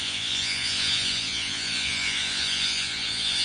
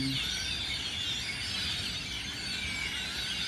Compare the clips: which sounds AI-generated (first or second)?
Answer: first